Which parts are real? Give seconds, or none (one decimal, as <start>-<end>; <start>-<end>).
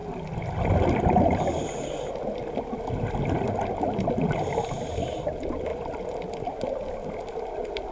0.0-7.9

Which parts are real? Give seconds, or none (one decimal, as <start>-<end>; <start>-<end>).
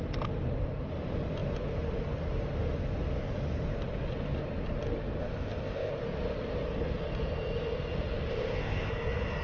0.0-5.2; 5.9-8.3; 8.9-9.4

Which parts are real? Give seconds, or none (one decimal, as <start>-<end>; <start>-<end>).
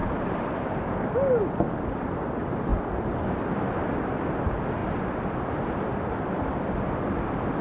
1.1-2.7; 3.4-7.6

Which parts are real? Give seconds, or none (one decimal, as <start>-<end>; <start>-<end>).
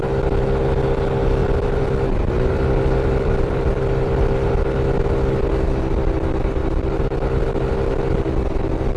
0.0-1.4; 4.5-9.0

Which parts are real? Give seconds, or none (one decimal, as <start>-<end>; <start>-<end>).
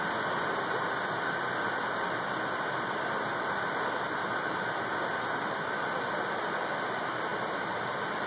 0.0-8.3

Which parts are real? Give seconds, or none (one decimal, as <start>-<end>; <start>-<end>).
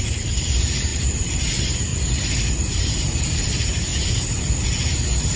1.9-2.5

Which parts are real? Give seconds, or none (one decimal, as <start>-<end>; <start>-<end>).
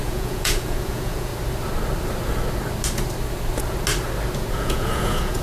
1.3-4.5